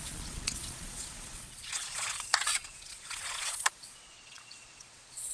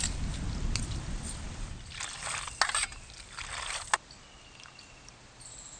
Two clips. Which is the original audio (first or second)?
second